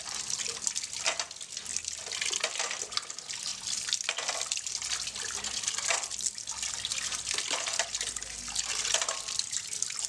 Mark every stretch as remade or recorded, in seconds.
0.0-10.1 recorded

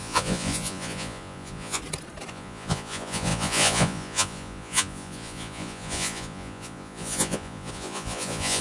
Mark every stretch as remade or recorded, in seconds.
0.0-1.8 remade; 1.8-2.3 recorded; 2.3-8.6 remade

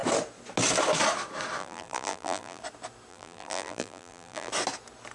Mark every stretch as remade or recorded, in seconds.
0.0-1.6 recorded; 1.6-2.6 remade; 2.6-3.1 recorded; 3.1-4.5 remade; 4.5-5.1 recorded